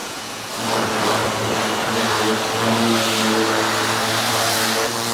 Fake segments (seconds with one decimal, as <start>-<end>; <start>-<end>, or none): 0.0-0.5